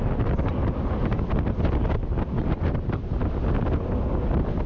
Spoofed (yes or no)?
no